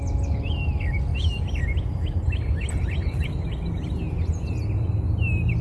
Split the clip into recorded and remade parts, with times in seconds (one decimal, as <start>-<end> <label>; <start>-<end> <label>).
0.0-5.6 recorded

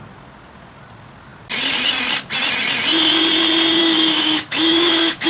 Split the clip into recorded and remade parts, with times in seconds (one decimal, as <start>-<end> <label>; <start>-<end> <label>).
0.0-3.8 recorded; 3.8-5.3 remade